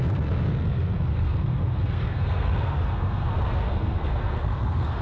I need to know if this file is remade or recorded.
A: remade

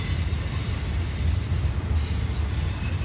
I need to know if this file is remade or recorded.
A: recorded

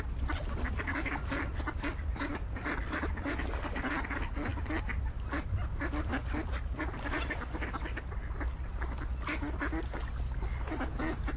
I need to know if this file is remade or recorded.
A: recorded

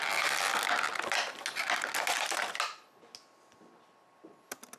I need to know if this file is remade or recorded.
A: recorded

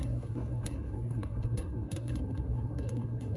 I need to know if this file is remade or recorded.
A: remade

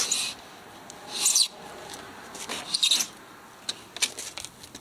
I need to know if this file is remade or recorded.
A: recorded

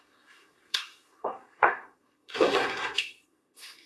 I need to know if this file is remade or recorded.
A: remade